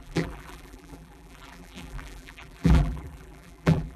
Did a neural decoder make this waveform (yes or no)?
yes